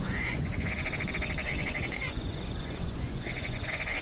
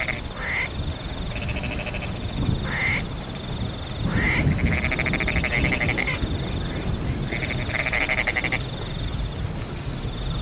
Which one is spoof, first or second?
first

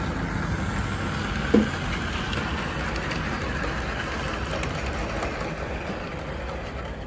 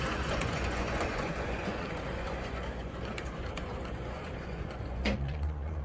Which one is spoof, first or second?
second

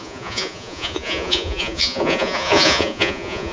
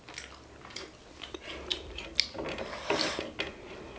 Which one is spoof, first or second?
first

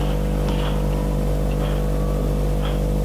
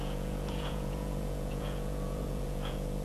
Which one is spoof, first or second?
second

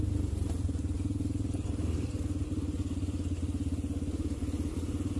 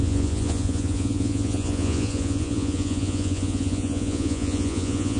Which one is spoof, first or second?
second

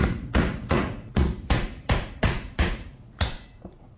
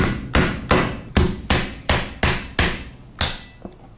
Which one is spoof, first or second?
first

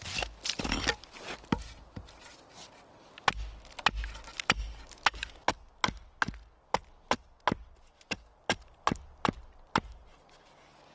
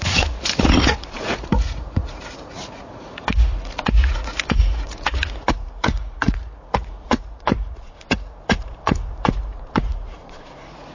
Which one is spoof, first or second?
second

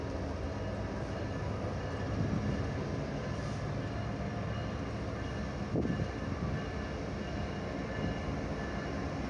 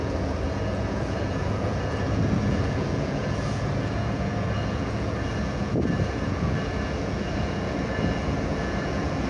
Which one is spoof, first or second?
second